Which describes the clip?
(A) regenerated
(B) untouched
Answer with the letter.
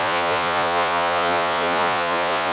A